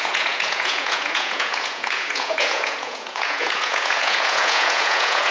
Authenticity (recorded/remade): remade